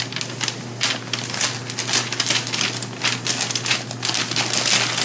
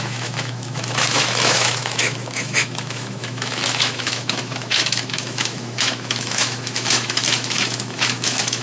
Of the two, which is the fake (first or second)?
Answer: second